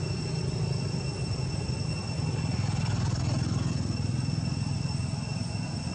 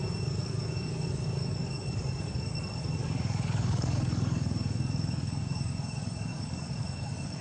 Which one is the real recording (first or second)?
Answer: first